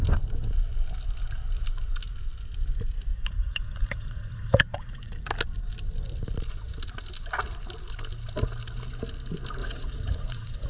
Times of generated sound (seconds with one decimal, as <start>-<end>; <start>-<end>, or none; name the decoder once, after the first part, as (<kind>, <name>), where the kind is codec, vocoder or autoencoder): 3.1-5.1 (vocoder, Vocos); 9.6-10.7